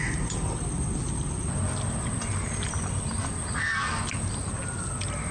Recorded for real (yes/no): yes